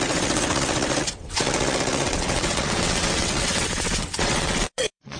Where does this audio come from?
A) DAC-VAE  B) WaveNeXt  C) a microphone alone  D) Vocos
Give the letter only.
B